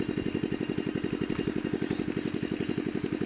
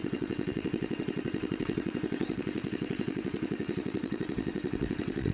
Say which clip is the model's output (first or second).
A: second